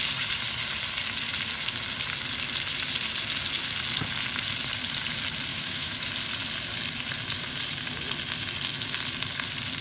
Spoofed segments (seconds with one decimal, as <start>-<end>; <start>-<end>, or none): 5.5-6.1